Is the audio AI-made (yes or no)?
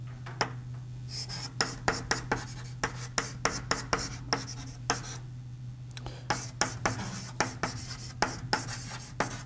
no